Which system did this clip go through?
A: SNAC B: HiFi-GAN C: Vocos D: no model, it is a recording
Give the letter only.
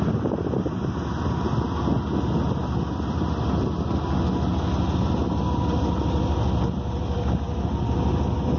D